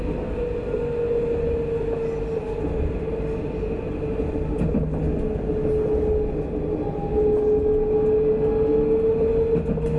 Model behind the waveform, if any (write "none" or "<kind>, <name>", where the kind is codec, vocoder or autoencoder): none